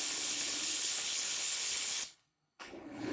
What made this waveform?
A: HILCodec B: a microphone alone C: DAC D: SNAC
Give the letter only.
A